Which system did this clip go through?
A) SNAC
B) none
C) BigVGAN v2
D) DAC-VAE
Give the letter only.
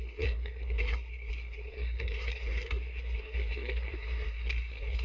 A